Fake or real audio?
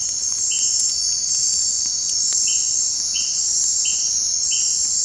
fake